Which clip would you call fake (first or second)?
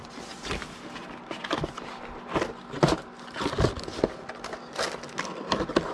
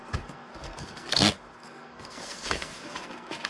second